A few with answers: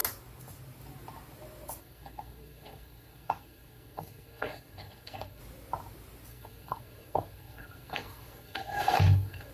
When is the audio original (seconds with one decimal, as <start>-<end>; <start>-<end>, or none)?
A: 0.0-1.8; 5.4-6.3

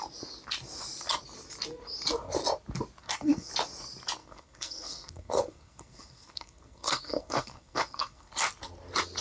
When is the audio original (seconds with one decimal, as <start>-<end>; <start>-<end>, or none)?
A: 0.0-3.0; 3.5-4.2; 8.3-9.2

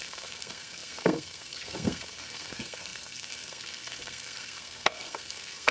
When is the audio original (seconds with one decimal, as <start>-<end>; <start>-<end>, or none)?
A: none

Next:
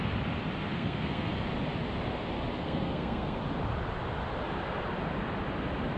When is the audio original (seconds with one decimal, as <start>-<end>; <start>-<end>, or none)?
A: 0.0-0.7; 1.3-2.6; 3.4-6.0

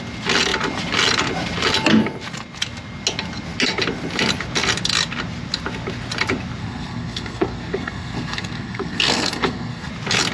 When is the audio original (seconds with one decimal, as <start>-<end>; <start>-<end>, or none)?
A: 0.0-6.6; 9.9-10.3

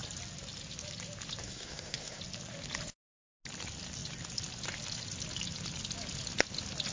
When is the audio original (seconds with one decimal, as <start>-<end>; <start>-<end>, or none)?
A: 0.0-1.4; 2.2-6.9

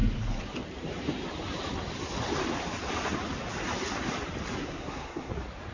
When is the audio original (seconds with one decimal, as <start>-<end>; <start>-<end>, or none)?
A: 0.0-4.6; 5.3-5.7